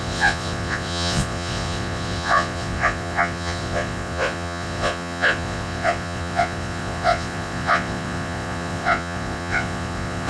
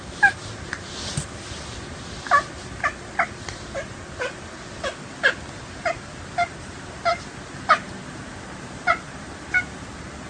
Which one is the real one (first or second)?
second